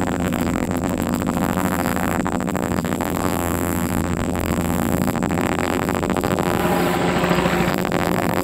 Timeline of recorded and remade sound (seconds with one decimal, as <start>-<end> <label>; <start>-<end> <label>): 0.0-6.6 remade; 6.6-7.7 recorded; 7.7-8.4 remade